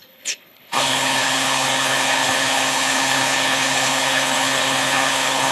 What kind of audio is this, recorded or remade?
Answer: remade